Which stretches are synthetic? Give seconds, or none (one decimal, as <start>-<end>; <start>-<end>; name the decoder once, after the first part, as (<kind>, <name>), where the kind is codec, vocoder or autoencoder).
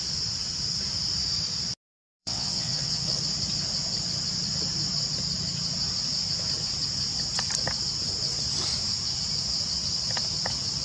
2.2-3.2 (vocoder, WaveNeXt)